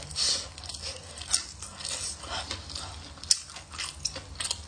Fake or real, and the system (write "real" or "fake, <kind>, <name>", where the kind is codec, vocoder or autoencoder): real